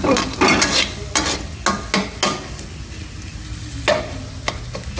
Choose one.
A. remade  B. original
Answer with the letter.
B